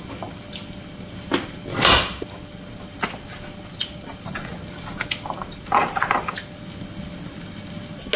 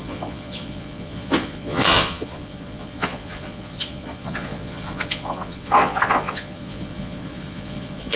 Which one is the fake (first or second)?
second